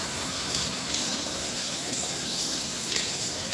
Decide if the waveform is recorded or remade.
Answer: remade